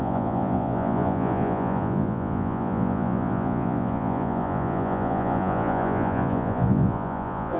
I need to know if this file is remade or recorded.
remade